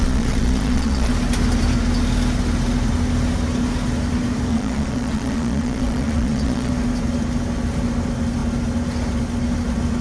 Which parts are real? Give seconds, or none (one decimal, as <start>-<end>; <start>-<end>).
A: 1.1-4.5; 6.7-10.0